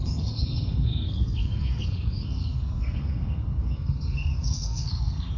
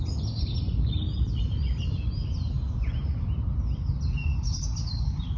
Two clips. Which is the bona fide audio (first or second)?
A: second